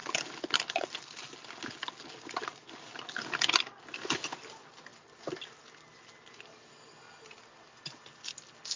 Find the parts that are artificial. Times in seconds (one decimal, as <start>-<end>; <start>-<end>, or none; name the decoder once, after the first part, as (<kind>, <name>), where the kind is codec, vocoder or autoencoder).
none